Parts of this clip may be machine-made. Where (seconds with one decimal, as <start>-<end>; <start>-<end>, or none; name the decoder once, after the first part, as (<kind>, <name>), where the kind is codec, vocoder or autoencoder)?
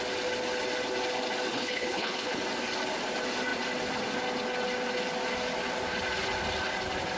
1.5-2.4 (codec, HILCodec)